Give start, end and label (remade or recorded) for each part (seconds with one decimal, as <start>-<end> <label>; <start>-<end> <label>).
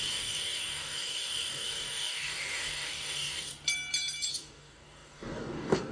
0.0-3.5 remade; 3.5-4.3 recorded; 4.3-5.9 remade